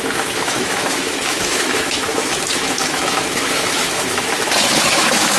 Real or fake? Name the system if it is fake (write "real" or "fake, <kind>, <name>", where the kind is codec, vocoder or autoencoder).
fake, autoencoder, DAC-VAE